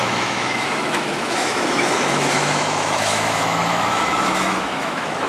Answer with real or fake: fake